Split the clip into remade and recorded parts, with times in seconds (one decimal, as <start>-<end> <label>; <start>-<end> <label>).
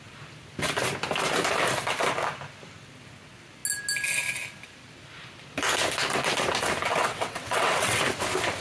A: 0.0-7.0 recorded; 7.0-8.0 remade; 8.0-8.6 recorded